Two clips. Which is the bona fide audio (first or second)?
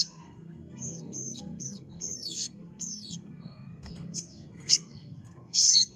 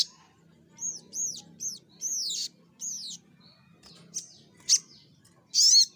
second